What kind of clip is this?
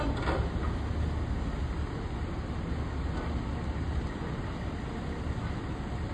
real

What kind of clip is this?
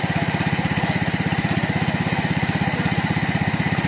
fake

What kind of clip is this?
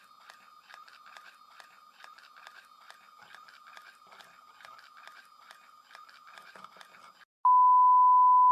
real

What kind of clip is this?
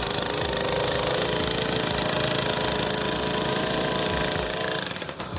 real